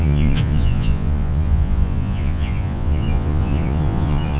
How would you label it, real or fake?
fake